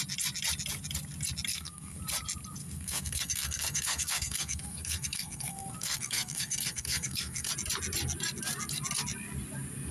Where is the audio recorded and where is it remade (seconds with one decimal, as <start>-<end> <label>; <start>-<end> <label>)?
0.0-1.5 recorded; 1.5-2.0 remade; 2.0-2.6 recorded; 2.6-7.5 remade; 7.5-9.9 recorded